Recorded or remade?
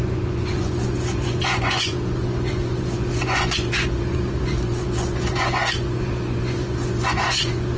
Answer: remade